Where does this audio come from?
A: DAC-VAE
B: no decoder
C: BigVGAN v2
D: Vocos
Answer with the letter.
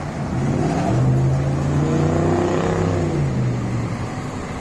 B